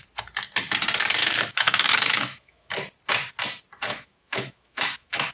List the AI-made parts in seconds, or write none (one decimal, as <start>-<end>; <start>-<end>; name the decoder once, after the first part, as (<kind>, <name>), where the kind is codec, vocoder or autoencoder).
1.2-2.7 (autoencoder, DAC-VAE); 3.9-5.3